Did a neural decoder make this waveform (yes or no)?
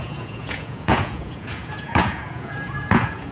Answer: yes